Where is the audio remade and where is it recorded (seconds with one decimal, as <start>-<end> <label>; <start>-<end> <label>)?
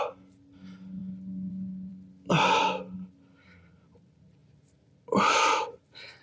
0.0-6.2 recorded